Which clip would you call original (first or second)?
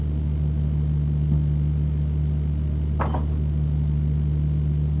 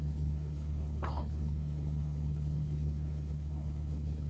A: first